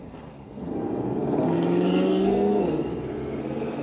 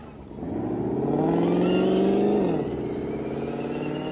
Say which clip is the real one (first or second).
second